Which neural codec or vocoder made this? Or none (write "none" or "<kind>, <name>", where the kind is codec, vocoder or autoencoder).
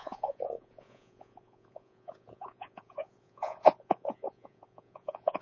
vocoder, Vocos